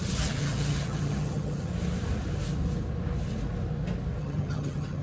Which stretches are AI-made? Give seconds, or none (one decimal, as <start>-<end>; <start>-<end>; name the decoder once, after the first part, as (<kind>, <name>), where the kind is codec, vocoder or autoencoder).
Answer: 0.0-1.7 (vocoder, HiFi-GAN); 4.2-5.0